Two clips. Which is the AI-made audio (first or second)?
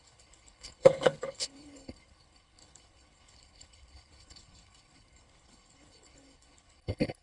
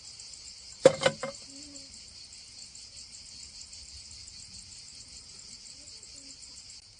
first